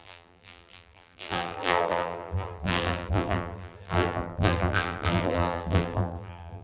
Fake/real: fake